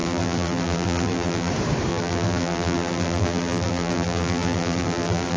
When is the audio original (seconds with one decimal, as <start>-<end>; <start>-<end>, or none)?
1.5-1.9

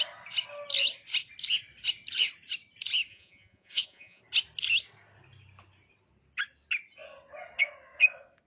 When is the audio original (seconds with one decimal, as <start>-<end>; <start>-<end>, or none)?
0.0-3.1; 4.2-8.5